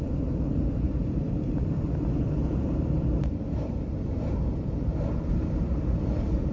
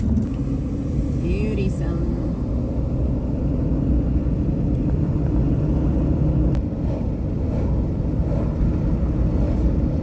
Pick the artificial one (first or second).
first